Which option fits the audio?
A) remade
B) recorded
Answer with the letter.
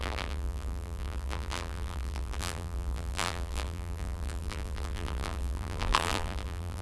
A